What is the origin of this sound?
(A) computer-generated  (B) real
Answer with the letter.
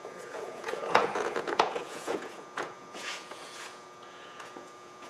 A